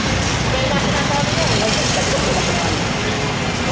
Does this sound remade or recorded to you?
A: recorded